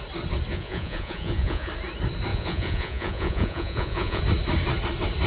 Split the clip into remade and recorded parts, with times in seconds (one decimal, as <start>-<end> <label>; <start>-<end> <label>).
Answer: 0.0-0.5 recorded; 0.5-1.7 remade; 1.7-2.3 recorded; 2.3-4.2 remade; 4.2-5.3 recorded